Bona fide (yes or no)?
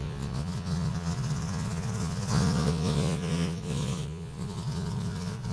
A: no